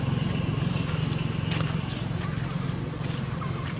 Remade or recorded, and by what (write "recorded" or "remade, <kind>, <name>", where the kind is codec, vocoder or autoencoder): recorded